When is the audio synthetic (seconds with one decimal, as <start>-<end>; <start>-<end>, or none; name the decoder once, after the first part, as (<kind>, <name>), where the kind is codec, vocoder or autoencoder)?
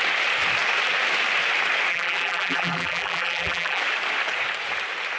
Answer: 1.9-3.8 (vocoder, BigVGAN v2)